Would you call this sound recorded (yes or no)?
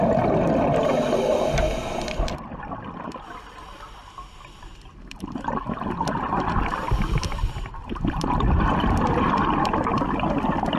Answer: yes